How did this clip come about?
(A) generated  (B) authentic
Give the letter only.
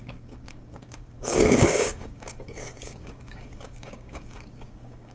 A